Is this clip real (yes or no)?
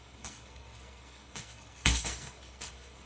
no